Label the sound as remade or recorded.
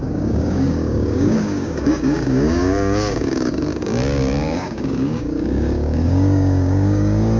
remade